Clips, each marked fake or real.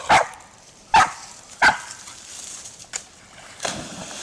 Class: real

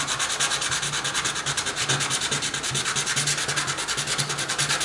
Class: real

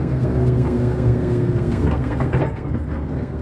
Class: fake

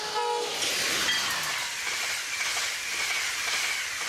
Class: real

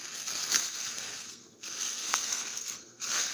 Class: fake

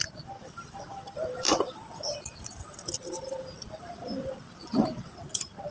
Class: fake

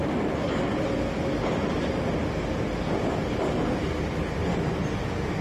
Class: real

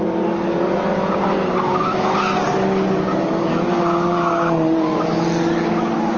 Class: real